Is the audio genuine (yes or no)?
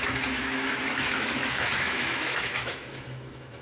no